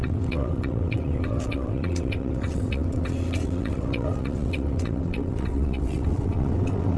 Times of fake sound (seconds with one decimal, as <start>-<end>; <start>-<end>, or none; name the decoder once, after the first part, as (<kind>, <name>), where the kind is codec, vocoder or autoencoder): 0.0-7.0 (vocoder, WaveNeXt)